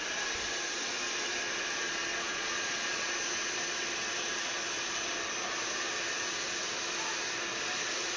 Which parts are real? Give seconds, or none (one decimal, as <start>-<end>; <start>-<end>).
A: 0.0-2.1; 3.1-8.2